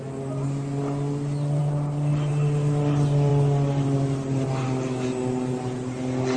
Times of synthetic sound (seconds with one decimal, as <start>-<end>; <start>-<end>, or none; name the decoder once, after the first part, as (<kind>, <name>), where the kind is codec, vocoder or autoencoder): none